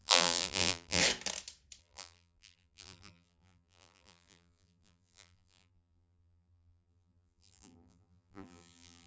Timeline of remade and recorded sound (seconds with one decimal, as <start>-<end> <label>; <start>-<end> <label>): 0.0-1.0 remade; 1.0-1.8 recorded; 1.8-9.1 remade